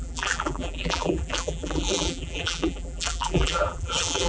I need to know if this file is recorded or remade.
remade